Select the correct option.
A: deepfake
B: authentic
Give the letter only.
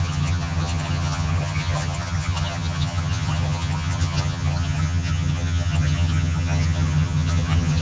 A